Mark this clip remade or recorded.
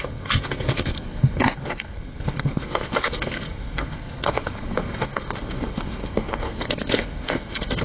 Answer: remade